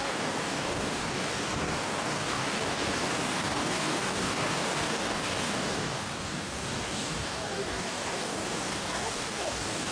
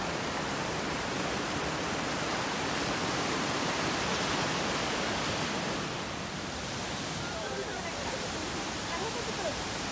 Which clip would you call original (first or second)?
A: second